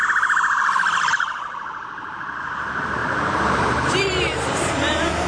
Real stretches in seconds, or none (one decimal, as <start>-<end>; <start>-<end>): 0.0-1.1